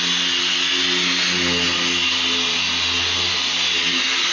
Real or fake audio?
real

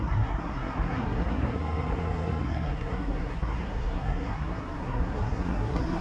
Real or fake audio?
fake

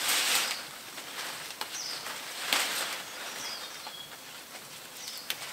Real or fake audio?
real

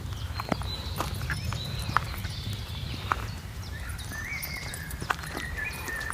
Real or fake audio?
fake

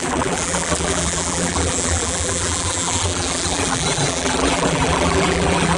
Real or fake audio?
fake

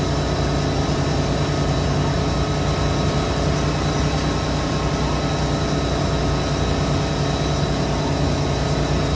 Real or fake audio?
real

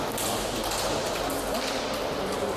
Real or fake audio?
real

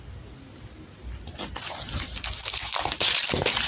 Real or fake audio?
real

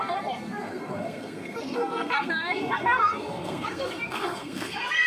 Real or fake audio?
fake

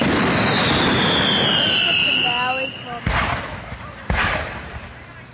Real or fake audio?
real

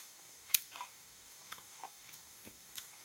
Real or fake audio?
fake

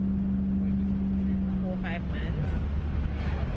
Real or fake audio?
real